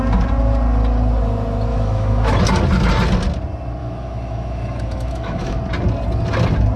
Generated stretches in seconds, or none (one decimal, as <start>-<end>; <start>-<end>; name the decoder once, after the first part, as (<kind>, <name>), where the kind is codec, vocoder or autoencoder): 1.7-2.4 (autoencoder, DAC-VAE); 3.8-5.6

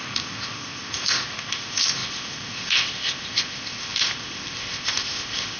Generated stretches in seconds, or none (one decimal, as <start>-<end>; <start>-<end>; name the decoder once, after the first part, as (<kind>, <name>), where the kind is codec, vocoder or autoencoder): 0.0-5.6 (codec, ZipCodec)